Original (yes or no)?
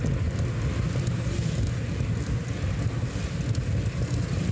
yes